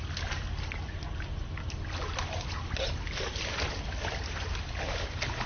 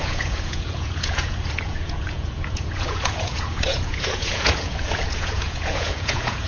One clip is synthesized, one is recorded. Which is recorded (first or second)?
first